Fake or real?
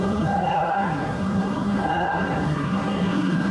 fake